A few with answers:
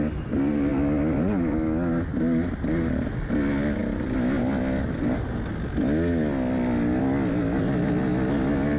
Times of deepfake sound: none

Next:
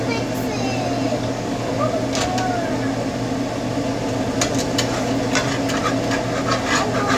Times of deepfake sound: 1.1-1.6

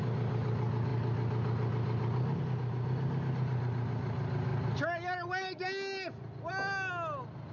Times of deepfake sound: none

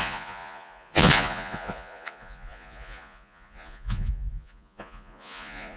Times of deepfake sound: 0.0-5.8

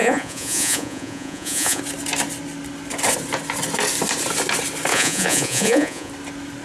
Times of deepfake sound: 0.0-1.8; 4.9-6.1